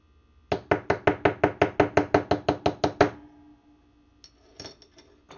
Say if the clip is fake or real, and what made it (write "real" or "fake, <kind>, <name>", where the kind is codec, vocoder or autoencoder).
real